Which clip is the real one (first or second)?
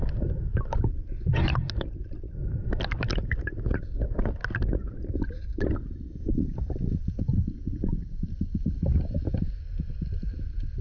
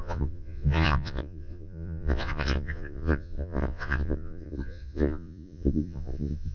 first